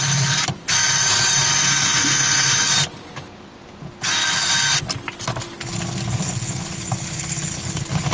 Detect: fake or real real